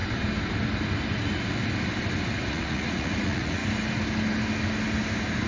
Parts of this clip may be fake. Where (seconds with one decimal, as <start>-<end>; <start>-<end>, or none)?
2.5-3.6